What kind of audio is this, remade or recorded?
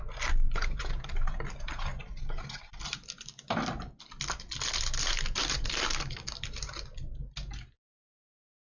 recorded